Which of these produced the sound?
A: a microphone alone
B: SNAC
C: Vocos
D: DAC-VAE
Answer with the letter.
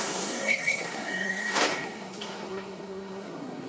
B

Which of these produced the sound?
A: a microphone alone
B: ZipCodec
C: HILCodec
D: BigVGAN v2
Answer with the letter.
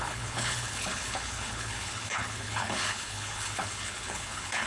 C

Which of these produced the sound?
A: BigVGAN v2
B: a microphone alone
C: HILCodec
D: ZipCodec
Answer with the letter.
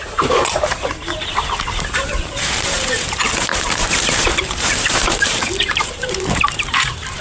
A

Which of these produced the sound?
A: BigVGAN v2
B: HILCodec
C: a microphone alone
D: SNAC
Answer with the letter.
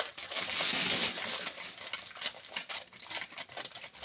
C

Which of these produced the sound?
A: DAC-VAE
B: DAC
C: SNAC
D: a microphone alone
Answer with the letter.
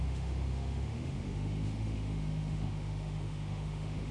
A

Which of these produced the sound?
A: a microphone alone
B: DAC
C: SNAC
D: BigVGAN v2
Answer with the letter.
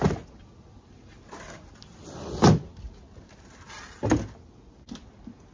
A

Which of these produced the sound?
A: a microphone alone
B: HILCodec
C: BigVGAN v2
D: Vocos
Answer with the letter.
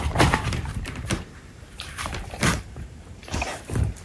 C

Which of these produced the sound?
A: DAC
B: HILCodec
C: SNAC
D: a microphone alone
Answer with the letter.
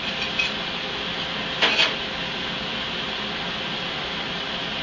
D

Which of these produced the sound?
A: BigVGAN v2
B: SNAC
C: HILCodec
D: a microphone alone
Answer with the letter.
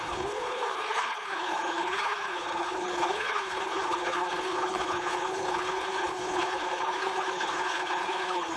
C